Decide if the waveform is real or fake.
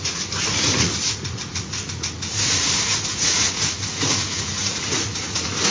fake